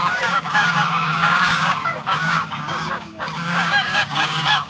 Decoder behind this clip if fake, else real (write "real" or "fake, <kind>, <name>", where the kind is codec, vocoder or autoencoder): fake, codec, DAC